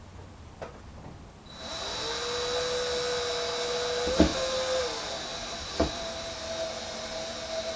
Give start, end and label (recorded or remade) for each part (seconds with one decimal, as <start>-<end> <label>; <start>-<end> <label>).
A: 0.0-5.3 recorded; 5.3-6.2 remade; 6.2-7.8 recorded

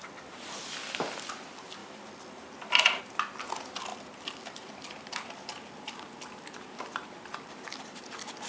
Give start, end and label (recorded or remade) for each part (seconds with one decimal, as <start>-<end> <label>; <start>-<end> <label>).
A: 0.0-1.8 recorded; 1.8-3.0 remade; 3.0-3.9 recorded; 3.9-8.5 remade

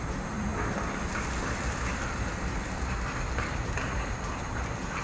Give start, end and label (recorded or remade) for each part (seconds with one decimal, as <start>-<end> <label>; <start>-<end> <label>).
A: 0.0-0.5 remade; 0.5-1.7 recorded; 1.7-2.3 remade; 2.3-4.5 recorded; 4.5-5.0 remade

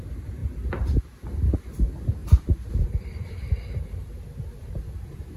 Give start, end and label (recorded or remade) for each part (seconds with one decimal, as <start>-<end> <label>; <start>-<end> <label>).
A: 0.0-2.2 recorded; 2.2-5.4 remade

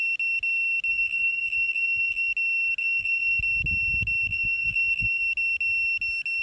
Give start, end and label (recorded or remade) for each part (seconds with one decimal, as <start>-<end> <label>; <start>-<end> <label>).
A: 0.0-0.9 recorded; 0.9-2.3 remade; 2.3-2.8 recorded; 2.8-3.4 remade; 3.4-4.3 recorded; 4.3-5.2 remade; 5.2-6.4 recorded

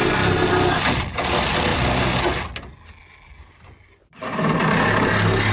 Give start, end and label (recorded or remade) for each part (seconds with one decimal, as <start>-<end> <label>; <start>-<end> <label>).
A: 0.0-0.5 remade; 0.5-1.7 recorded; 1.7-2.2 remade; 2.2-5.5 recorded